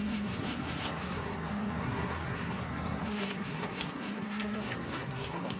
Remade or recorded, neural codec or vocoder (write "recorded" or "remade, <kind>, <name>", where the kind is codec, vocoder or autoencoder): remade, codec, SNAC